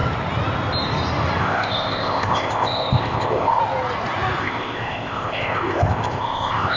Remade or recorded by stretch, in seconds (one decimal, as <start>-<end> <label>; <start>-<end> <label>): 0.0-1.4 recorded; 1.4-3.6 remade; 3.6-4.4 recorded; 4.4-6.8 remade